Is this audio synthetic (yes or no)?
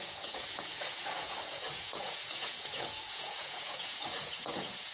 yes